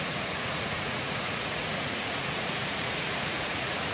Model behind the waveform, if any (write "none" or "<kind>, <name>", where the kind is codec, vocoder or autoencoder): vocoder, Vocos